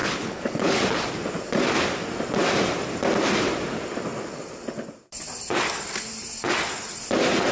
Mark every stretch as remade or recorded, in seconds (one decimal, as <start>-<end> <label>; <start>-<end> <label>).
0.0-0.8 remade; 0.8-7.5 recorded